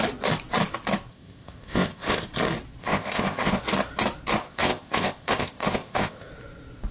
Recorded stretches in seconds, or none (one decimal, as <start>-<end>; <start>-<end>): 0.0-1.1; 2.2-2.8; 3.6-4.4; 6.3-6.9